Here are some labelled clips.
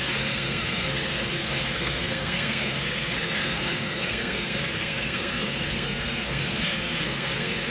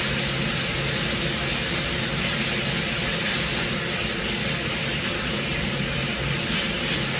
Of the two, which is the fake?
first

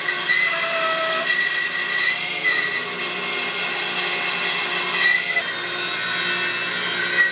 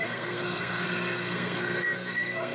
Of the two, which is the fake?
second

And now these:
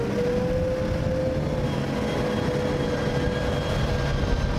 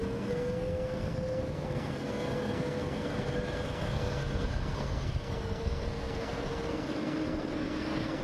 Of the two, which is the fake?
second